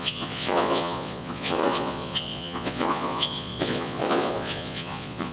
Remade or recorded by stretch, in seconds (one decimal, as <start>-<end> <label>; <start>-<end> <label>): 0.0-5.3 remade